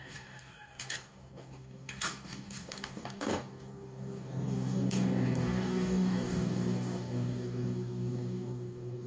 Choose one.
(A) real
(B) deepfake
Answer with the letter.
B